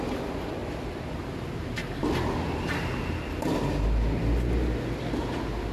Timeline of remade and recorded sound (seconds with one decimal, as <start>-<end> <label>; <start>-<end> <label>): 0.0-5.7 recorded